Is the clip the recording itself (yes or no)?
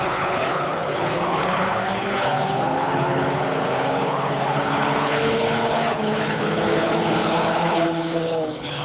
no